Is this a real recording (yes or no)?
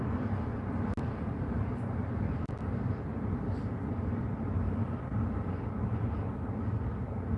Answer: yes